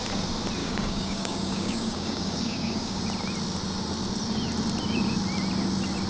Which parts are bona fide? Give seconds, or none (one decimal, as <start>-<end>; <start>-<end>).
0.0-0.6; 3.0-6.1